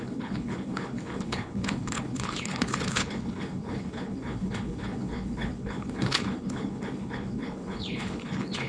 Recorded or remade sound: remade